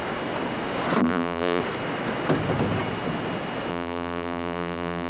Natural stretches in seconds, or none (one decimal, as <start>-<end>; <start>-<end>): 0.0-1.0; 1.6-3.7